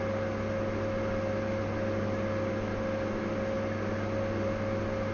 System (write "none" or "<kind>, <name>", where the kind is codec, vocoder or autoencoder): none